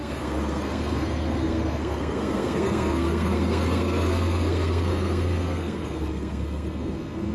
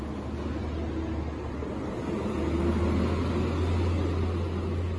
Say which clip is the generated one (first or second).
first